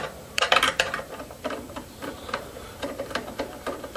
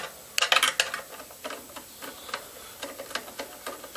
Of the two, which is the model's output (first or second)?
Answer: first